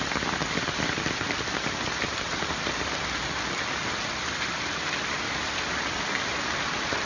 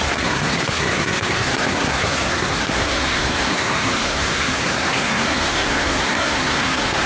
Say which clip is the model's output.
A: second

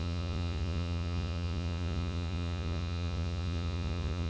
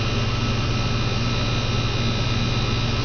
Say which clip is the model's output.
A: first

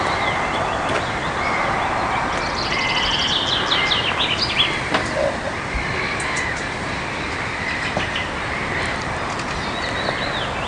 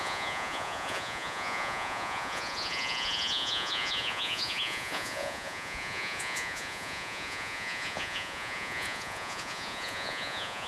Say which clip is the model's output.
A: second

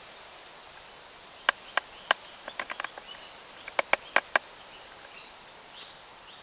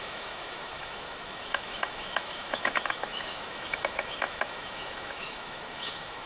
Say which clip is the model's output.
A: second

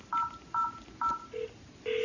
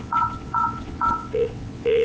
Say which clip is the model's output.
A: second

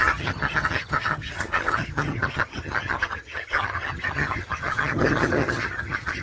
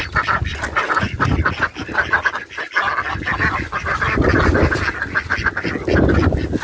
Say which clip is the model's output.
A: first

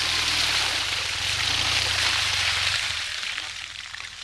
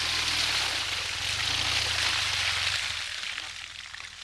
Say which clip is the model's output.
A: first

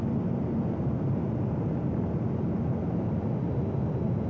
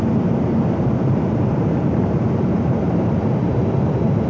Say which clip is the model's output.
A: second